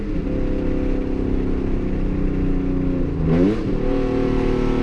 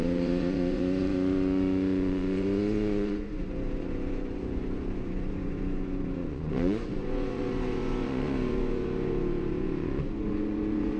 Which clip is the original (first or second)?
first